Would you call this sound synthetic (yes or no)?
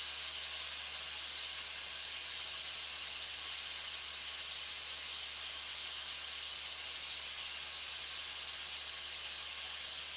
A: no